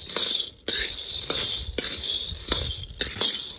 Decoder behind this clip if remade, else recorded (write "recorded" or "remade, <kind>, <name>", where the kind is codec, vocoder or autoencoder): recorded